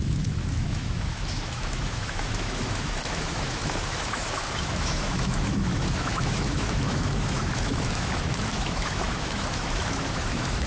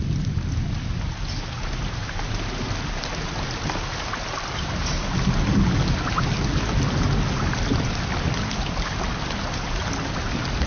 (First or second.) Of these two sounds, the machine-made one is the first